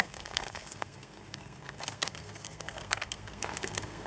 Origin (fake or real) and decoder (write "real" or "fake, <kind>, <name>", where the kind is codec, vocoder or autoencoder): fake, codec, SNAC